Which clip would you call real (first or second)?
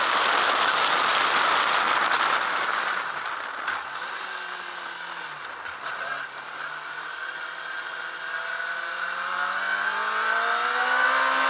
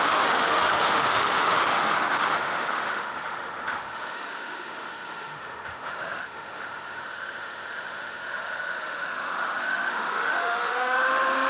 first